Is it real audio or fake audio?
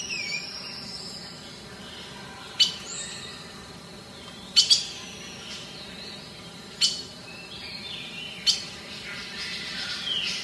real